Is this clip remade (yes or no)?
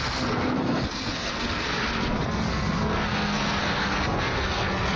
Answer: yes